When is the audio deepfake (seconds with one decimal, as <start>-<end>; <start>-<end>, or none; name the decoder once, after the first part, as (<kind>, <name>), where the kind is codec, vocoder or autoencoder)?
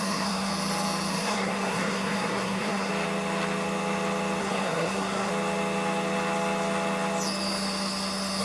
0.0-0.5 (codec, SNAC); 1.1-2.9; 4.4-5.3